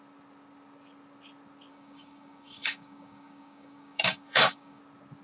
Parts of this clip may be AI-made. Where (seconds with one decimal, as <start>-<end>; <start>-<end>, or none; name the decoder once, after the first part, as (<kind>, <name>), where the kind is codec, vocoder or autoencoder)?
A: 1.7-4.8 (codec, DAC)